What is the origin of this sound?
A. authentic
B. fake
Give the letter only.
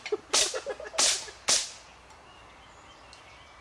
A